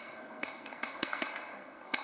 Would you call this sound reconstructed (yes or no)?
yes